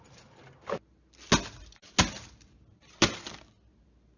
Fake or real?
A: real